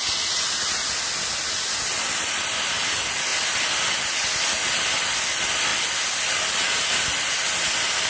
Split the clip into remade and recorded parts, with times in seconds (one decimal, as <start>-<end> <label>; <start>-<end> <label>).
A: 0.0-8.1 recorded